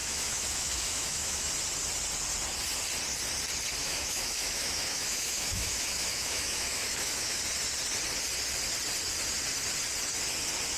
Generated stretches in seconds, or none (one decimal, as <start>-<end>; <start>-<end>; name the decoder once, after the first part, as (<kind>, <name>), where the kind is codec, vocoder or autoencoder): 0.0-1.5 (autoencoder, DAC-VAE); 3.8-7.4